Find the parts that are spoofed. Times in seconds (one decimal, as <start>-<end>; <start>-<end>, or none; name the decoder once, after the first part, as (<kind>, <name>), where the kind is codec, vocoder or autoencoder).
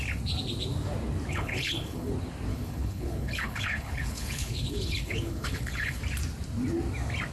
1.3-2.1 (codec, HILCodec); 2.5-6.0